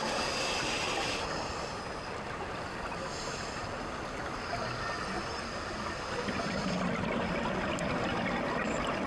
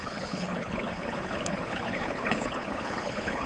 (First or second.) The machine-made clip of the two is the second